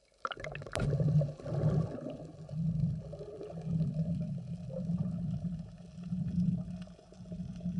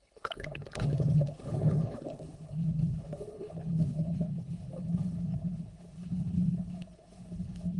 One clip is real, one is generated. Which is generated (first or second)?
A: second